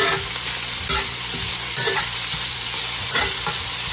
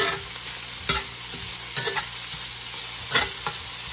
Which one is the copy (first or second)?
first